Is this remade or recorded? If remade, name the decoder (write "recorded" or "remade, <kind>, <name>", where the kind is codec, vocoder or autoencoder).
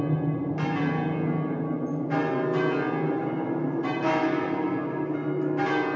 recorded